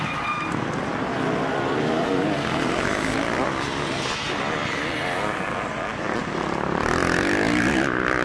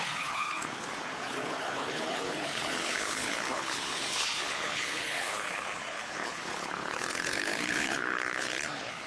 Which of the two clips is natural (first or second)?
first